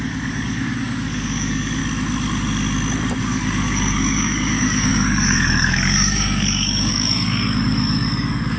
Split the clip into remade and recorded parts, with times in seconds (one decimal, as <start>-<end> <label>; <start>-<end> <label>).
0.0-1.8 remade; 1.8-3.2 recorded; 3.2-8.6 remade